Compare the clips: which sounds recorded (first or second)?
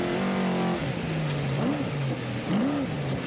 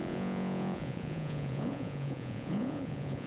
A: first